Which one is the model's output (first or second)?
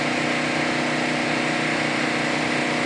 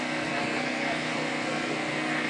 second